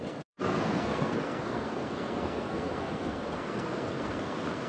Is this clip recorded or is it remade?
remade